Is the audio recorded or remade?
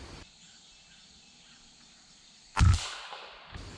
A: recorded